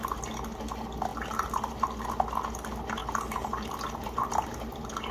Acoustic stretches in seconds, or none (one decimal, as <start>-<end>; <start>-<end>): 0.0-1.1; 1.8-3.0